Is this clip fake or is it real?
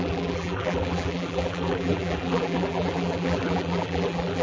fake